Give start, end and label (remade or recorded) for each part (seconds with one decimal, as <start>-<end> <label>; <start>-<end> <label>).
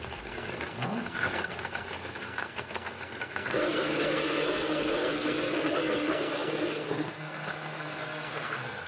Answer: 0.0-8.9 remade